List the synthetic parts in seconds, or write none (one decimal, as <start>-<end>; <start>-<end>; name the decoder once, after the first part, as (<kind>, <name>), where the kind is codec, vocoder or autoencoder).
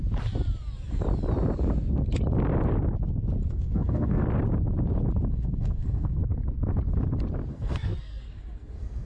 3.5-4.2 (codec, SNAC); 5.3-6.2; 7.5-9.1